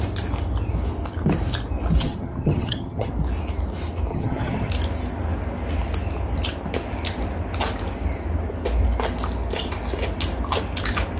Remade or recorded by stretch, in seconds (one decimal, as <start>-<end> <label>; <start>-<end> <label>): 0.0-2.0 recorded; 2.0-3.1 remade; 3.1-4.1 recorded; 4.1-4.7 remade; 4.7-11.2 recorded